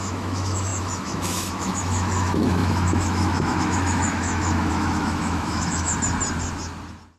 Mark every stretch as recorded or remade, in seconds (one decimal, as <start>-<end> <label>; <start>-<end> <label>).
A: 0.0-5.9 remade; 5.9-7.2 recorded